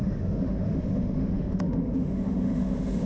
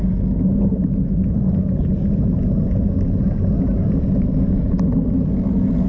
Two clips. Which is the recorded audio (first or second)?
second